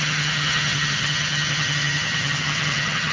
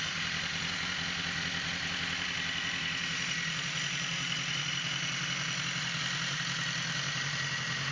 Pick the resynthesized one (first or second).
first